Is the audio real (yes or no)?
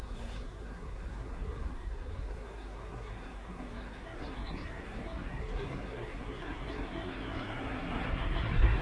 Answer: no